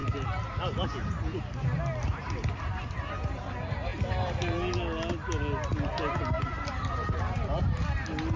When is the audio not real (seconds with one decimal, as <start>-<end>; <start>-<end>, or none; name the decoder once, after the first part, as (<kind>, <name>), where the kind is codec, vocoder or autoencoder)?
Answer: none